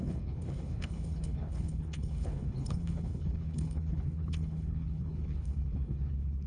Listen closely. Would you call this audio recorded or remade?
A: remade